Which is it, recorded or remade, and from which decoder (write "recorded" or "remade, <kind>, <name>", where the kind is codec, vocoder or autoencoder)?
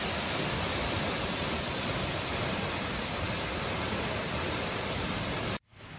remade, vocoder, BigVGAN v2